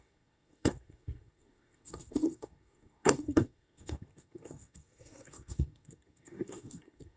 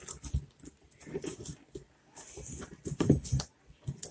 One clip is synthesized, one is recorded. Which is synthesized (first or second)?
first